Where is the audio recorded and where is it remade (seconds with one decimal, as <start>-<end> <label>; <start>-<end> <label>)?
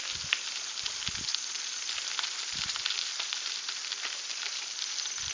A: 0.0-5.3 recorded